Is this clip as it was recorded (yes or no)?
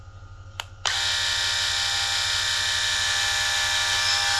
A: yes